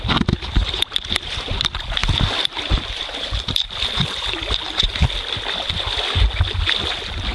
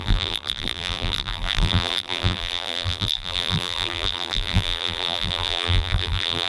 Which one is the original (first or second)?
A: first